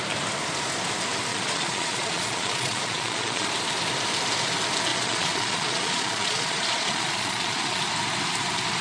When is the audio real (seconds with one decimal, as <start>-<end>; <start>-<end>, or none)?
0.0-1.3; 3.5-4.9; 7.8-8.8